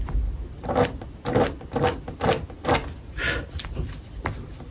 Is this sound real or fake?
real